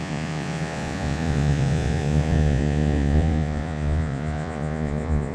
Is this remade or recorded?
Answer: remade